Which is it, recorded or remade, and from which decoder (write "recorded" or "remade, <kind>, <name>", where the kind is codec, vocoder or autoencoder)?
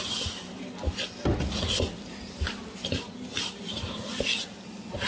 recorded